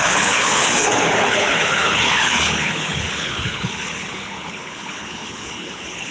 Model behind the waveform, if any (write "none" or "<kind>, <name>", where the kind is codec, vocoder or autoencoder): codec, HILCodec